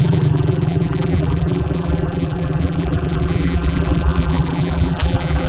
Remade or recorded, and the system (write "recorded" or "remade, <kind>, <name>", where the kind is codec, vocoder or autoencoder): remade, vocoder, BigVGAN v2